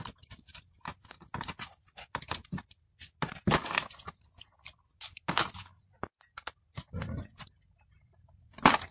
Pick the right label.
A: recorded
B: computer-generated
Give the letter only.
A